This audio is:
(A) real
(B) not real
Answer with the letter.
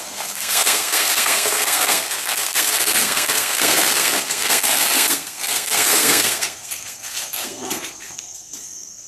B